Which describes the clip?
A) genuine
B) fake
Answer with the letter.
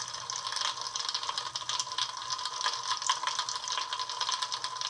A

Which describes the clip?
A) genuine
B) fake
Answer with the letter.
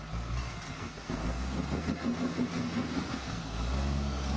B